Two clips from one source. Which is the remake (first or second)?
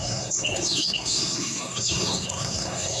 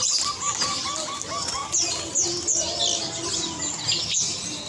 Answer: first